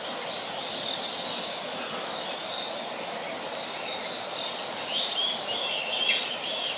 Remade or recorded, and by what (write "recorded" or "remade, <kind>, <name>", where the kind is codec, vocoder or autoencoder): recorded